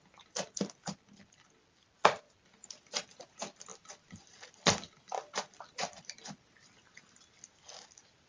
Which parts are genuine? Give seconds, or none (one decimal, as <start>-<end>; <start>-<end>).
0.0-3.7; 6.3-8.3